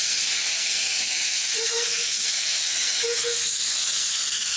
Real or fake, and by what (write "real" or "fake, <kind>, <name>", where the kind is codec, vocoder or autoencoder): fake, codec, SNAC